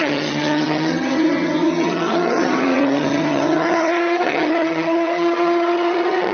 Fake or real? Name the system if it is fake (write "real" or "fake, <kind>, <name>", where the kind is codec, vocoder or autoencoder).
fake, vocoder, HiFi-GAN